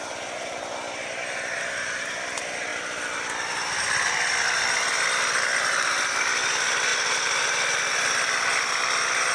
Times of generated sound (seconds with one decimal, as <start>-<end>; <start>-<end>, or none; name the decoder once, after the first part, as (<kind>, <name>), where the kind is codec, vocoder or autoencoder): none